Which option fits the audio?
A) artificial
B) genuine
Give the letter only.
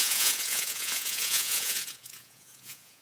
A